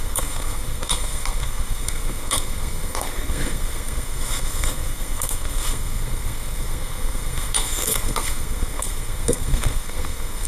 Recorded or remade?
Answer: remade